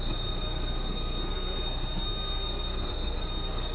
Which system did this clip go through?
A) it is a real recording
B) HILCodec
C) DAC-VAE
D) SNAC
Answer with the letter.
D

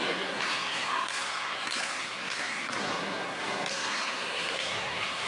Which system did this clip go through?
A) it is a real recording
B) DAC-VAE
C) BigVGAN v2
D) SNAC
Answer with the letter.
D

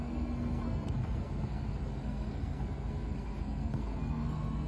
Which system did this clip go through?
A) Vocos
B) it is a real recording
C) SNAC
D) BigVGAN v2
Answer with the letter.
C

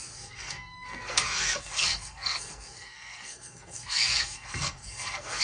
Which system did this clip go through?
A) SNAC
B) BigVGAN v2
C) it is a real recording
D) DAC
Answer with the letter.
A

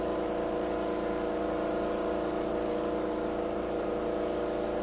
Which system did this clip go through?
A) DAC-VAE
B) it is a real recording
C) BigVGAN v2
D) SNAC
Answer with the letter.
B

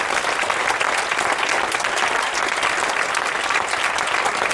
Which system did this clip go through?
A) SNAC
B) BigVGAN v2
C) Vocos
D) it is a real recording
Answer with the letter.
D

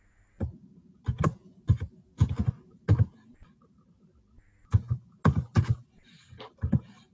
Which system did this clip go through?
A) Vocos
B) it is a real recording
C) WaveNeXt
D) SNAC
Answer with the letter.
B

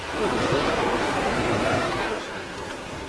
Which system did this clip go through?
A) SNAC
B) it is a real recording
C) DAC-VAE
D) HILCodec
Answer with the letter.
A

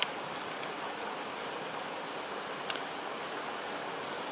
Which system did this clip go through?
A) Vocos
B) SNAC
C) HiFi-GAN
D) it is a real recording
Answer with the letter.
D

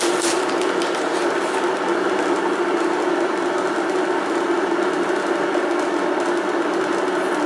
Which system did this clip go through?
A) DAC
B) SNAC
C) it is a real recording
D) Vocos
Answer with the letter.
C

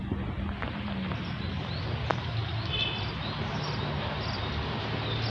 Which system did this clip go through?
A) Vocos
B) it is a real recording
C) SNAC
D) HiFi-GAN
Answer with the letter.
B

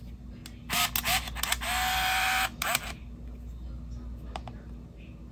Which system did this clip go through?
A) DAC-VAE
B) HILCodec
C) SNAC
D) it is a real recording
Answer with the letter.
D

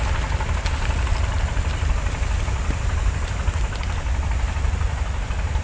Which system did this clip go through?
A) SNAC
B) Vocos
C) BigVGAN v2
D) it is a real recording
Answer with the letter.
D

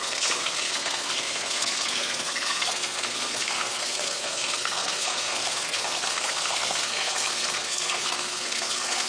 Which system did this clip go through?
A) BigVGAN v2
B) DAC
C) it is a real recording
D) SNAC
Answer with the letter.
D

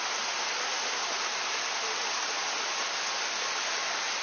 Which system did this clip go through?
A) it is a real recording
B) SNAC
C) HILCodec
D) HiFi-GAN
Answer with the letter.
A